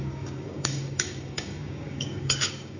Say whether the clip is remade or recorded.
remade